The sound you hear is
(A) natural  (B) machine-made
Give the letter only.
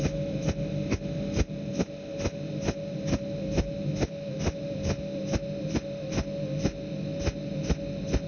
A